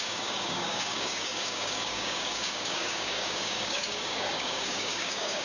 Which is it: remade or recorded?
remade